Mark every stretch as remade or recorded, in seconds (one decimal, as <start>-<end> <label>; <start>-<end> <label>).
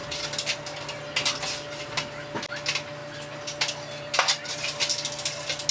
0.0-5.7 recorded